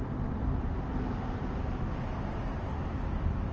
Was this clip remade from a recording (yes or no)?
no